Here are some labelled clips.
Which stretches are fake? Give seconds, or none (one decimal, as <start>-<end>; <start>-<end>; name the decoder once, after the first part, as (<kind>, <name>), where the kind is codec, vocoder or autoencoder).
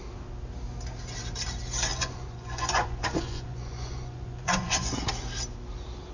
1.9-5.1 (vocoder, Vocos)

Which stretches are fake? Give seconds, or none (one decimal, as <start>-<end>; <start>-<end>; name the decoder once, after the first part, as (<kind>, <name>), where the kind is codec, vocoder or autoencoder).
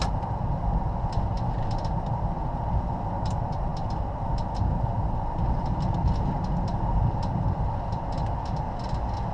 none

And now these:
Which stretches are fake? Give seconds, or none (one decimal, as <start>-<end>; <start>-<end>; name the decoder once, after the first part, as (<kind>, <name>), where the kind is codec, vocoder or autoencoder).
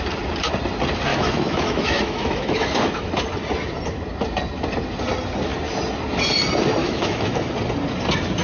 1.1-3.1 (autoencoder, DAC-VAE); 6.8-7.5